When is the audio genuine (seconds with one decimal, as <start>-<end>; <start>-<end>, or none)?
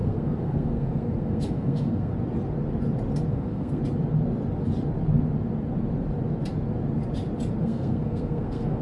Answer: 2.1-3.3; 3.8-7.6